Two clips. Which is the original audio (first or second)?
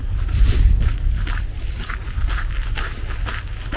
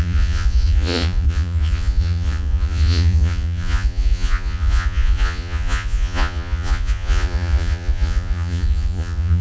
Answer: first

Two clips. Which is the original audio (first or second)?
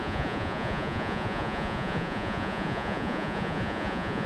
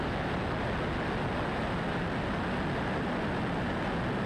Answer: second